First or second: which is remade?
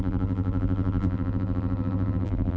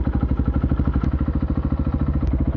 first